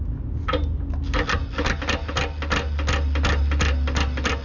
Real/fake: real